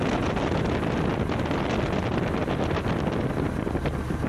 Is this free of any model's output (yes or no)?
yes